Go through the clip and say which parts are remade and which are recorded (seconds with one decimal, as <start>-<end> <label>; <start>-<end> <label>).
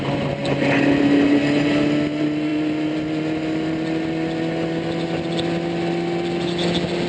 0.0-7.1 recorded